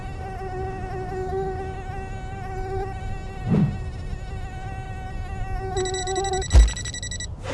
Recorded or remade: recorded